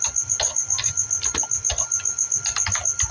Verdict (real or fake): real